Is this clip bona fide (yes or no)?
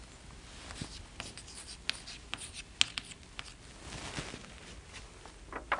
yes